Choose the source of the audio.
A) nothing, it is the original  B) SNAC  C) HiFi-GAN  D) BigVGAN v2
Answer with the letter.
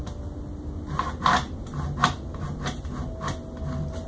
A